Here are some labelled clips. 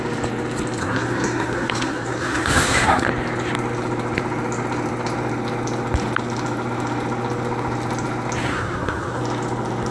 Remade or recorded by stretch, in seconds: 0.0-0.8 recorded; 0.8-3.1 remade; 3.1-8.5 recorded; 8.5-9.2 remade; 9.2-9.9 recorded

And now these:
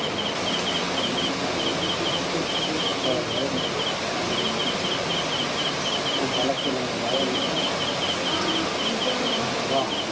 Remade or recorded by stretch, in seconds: 0.0-10.1 recorded

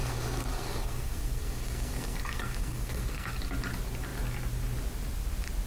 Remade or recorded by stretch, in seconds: 0.0-3.3 remade; 3.3-5.7 recorded

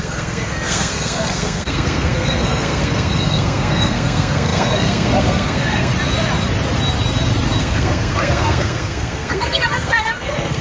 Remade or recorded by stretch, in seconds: 0.0-5.9 remade; 5.9-7.6 recorded; 7.6-10.6 remade

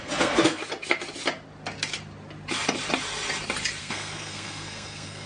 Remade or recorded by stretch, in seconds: 0.0-0.6 remade; 0.6-3.8 recorded; 3.8-5.3 remade